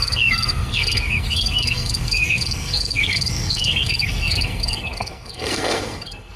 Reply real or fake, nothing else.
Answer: fake